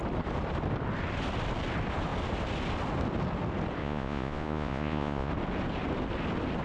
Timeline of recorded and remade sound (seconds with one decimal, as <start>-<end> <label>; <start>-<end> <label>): 0.0-3.8 recorded; 3.8-5.3 remade; 5.3-6.6 recorded